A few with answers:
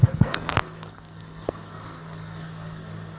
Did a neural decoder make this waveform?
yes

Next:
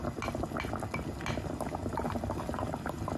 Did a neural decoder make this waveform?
no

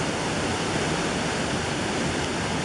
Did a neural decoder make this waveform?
no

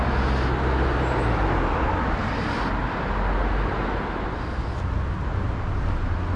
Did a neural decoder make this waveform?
no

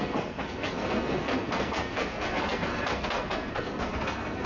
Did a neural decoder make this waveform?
yes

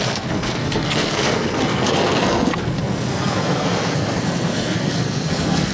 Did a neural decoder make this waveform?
yes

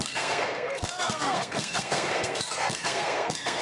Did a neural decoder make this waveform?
yes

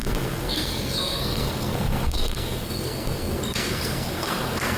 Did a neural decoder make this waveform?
yes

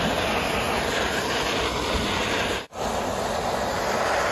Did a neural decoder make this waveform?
no